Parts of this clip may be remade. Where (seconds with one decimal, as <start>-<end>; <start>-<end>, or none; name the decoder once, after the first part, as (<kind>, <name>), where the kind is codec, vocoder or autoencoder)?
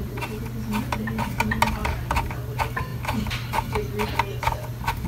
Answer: none